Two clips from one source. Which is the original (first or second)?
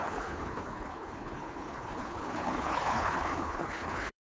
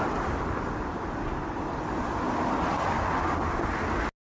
second